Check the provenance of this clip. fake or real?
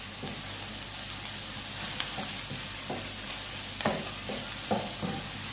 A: real